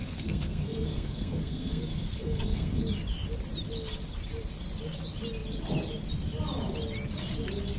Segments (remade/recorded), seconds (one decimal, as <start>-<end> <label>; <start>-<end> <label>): 0.0-2.8 remade; 2.8-7.8 recorded